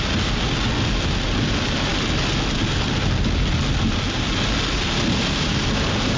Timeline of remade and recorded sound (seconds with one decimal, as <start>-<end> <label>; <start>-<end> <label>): 0.0-6.2 recorded